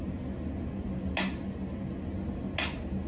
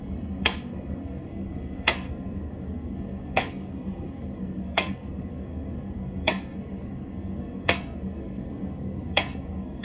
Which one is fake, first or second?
second